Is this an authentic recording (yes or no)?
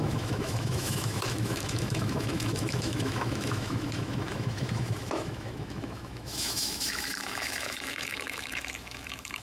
no